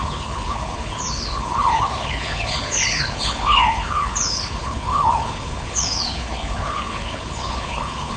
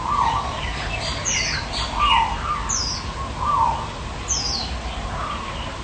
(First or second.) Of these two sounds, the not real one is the first